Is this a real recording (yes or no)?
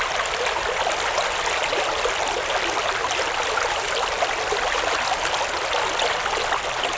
yes